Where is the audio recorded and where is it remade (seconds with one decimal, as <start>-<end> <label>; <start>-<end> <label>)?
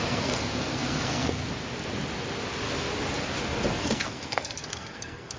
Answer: 0.0-1.4 remade; 1.4-3.8 recorded; 3.8-5.4 remade